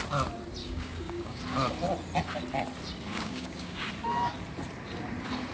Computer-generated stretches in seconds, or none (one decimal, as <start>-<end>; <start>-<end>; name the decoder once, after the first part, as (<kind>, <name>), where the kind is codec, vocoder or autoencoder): 0.6-1.4 (codec, DAC); 3.1-3.8